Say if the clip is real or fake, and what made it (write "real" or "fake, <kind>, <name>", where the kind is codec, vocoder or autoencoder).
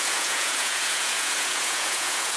fake, vocoder, Vocos